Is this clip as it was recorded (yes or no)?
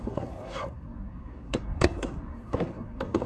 no